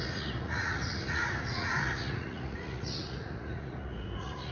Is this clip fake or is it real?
fake